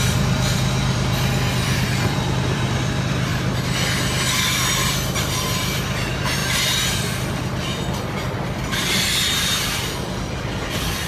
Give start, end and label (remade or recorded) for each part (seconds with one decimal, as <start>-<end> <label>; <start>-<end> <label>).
0.0-3.3 remade; 3.3-4.7 recorded; 4.7-11.1 remade